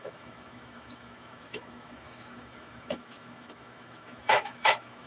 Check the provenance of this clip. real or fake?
fake